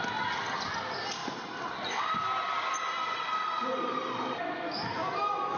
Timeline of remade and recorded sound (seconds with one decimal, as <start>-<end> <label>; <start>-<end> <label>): 0.0-5.6 recorded